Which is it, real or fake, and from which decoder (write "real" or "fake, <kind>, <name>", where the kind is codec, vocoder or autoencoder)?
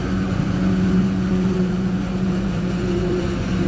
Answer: fake, vocoder, Vocos